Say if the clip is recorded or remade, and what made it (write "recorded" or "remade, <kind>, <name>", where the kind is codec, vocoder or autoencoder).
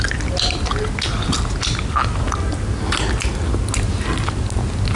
recorded